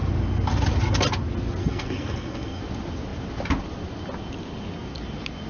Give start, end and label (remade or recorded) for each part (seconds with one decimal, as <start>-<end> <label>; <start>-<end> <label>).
0.0-1.6 recorded; 1.6-2.6 remade; 2.6-5.5 recorded

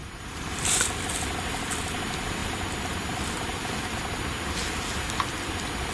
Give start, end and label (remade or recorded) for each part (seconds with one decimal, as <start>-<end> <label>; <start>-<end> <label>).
0.0-0.8 remade; 0.8-5.9 recorded

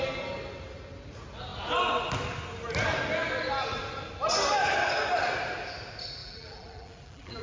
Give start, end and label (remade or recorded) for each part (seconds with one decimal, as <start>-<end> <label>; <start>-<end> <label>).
0.0-6.2 recorded; 6.2-7.4 remade